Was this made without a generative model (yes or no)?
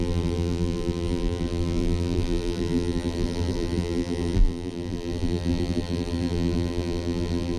no